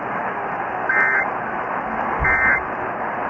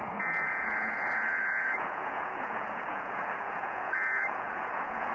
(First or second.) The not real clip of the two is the second